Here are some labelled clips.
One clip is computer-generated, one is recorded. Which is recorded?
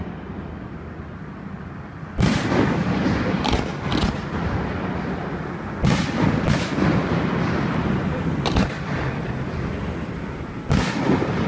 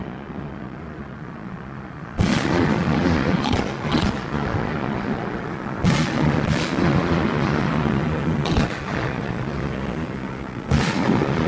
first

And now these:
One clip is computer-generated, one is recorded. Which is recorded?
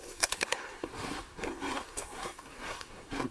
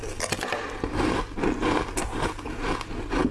second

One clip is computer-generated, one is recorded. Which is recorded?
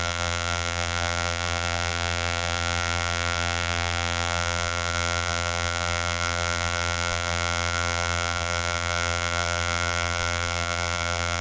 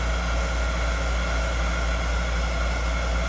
second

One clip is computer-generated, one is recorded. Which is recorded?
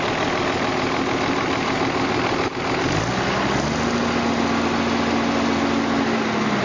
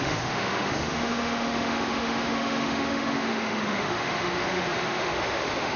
first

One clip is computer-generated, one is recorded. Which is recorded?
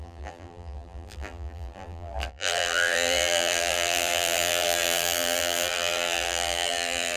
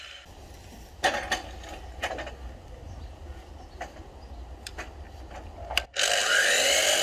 second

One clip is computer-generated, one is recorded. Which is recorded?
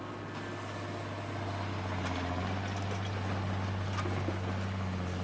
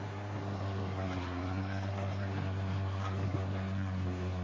first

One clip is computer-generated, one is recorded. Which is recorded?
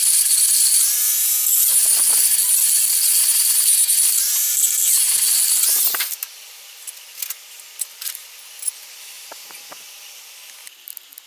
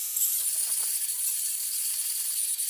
first